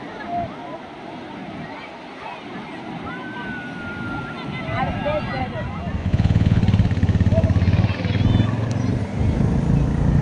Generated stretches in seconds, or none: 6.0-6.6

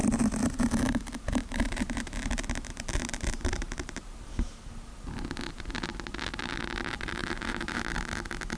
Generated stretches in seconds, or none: 0.0-4.6; 7.2-7.9

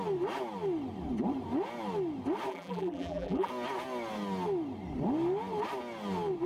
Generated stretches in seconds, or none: 2.5-3.5

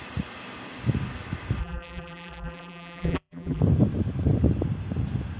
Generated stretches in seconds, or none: 1.6-3.6

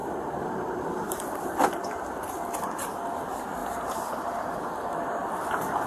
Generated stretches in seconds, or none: 0.0-1.2; 3.6-5.3